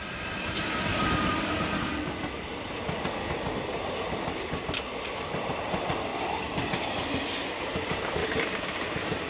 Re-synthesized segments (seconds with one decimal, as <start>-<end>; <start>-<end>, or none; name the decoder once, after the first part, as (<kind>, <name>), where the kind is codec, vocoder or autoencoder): 0.0-0.9 (vocoder, BigVGAN v2); 5.5-6.1; 7.6-8.2; 8.7-9.3